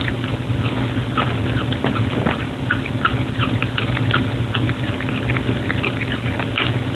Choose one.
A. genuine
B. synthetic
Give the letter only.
A